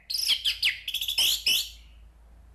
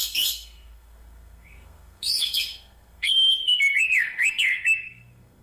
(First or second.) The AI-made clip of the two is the second